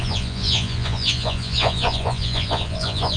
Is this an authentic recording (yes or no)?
no